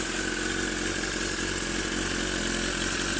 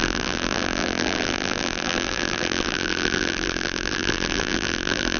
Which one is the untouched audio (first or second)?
first